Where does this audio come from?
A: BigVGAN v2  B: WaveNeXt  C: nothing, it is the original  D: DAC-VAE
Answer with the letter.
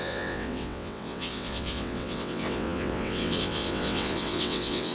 B